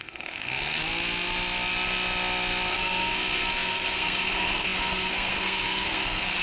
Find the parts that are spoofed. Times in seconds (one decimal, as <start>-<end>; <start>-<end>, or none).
0.0-0.8; 2.7-6.4

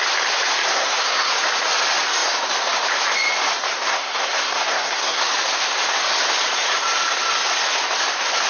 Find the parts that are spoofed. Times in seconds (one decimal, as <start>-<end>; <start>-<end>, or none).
0.6-1.3; 3.9-5.2